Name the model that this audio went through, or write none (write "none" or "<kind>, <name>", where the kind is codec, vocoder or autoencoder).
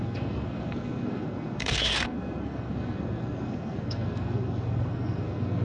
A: codec, SNAC